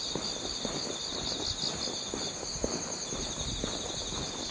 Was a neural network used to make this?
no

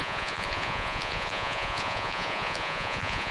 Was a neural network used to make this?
yes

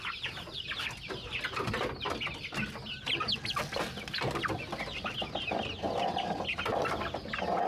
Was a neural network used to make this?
no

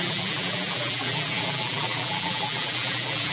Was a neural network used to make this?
yes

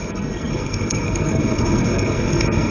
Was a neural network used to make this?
yes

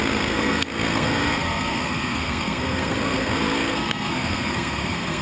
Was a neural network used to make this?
yes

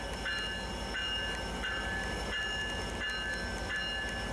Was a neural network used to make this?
no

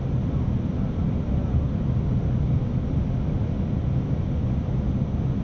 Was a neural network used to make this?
no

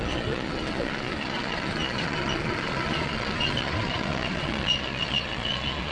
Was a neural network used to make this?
yes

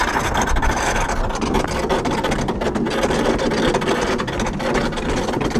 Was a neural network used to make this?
no